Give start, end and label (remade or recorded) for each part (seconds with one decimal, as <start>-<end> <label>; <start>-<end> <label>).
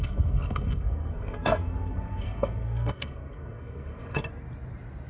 0.0-4.3 remade; 4.3-5.1 recorded